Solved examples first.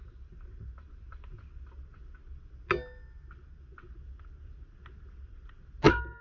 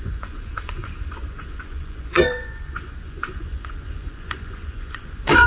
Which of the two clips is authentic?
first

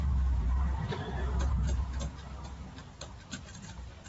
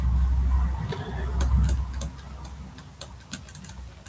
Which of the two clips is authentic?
second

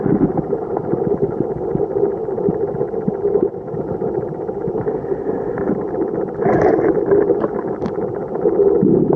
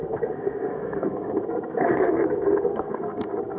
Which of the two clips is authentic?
first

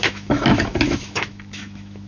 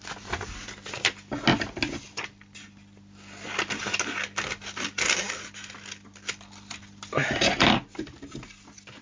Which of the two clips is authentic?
second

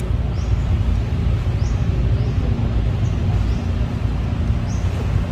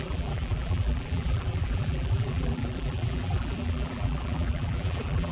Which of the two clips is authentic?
first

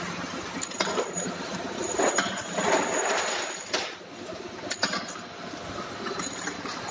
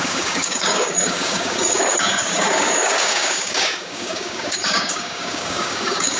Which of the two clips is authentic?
first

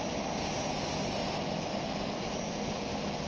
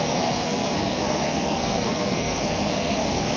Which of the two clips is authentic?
first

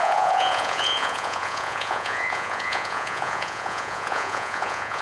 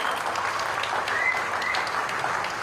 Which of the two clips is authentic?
second